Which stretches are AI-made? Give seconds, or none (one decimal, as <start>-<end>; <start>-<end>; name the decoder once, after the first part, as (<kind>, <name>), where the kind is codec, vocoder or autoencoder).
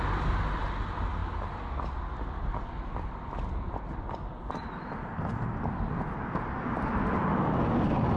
none